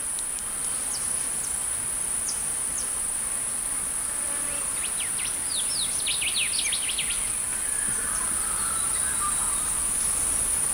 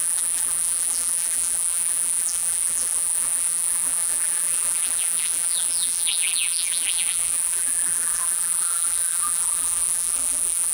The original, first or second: first